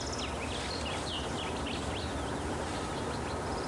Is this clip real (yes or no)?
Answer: yes